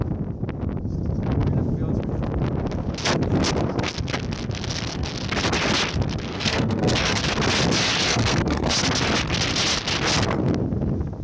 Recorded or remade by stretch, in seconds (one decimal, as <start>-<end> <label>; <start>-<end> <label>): 0.0-6.3 recorded; 6.3-7.2 remade; 7.2-8.1 recorded; 8.1-8.7 remade; 8.7-11.2 recorded